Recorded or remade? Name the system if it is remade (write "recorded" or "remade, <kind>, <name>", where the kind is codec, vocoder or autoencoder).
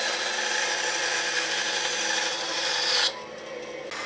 recorded